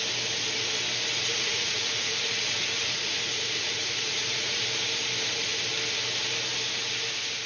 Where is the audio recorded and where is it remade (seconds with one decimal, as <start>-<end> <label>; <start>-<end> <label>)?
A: 0.0-1.1 recorded; 1.1-4.6 remade; 4.6-7.5 recorded